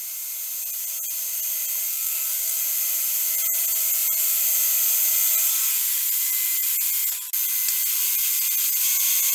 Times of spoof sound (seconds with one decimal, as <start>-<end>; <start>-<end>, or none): 1.9-2.6

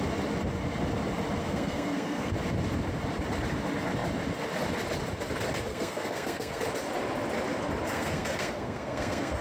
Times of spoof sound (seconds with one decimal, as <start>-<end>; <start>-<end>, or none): 1.4-2.3; 5.7-6.6; 7.9-9.4

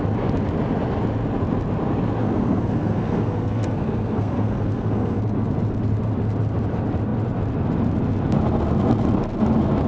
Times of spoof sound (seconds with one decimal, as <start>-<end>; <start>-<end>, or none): 2.2-5.2

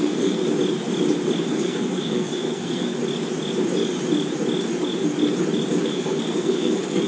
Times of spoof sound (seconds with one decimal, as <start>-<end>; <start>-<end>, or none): 0.0-0.4; 1.5-3.0; 5.8-7.1

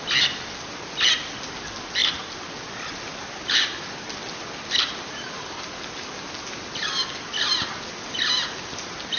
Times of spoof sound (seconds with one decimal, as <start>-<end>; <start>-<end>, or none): none

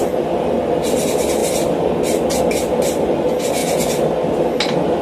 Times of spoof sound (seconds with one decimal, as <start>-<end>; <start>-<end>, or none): none